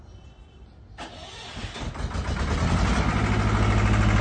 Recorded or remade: recorded